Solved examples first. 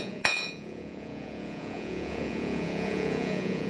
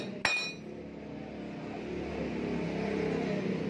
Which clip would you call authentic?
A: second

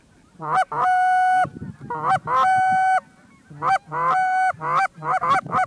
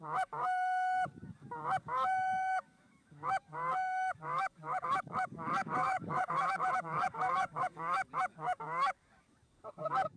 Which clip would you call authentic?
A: first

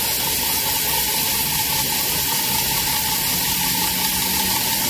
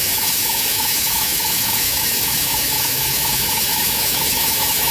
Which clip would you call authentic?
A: first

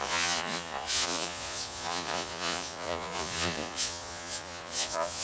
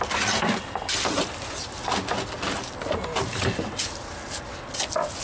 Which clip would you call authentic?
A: second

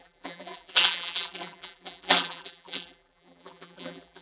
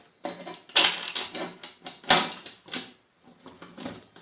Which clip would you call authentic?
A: second